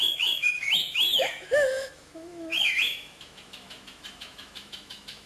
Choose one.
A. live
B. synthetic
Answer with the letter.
B